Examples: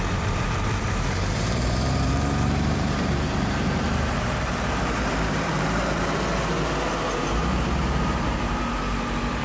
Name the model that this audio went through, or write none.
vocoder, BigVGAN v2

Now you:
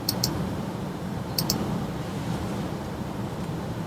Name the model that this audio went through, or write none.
vocoder, BigVGAN v2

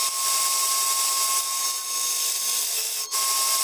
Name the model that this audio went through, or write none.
none